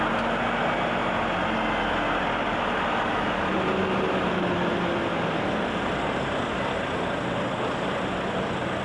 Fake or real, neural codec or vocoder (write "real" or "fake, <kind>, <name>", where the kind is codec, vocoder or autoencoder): real